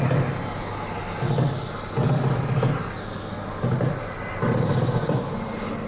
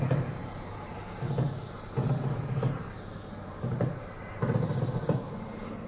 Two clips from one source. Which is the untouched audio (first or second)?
first